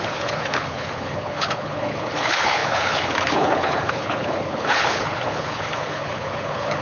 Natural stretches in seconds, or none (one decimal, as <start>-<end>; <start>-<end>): none